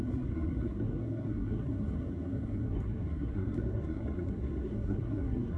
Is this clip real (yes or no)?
no